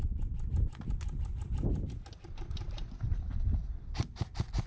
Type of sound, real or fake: real